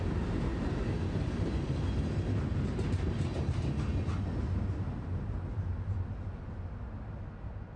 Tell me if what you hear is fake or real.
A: real